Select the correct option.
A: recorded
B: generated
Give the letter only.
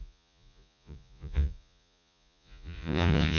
B